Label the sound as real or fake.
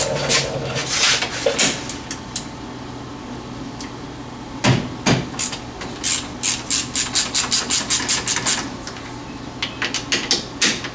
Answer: real